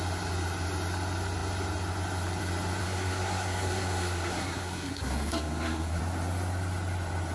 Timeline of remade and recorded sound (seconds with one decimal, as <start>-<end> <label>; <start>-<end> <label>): 0.0-2.8 recorded; 2.8-6.0 remade; 6.0-7.3 recorded